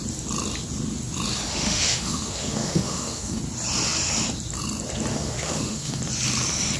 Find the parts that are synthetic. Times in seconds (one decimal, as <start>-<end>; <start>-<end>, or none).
1.5-3.4; 5.1-6.0